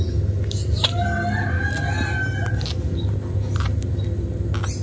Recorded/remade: recorded